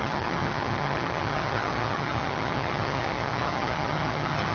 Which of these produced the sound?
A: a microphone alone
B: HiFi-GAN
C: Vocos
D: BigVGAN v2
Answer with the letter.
B